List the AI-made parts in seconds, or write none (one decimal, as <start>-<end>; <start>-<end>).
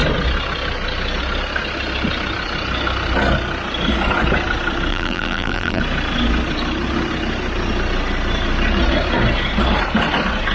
4.9-5.8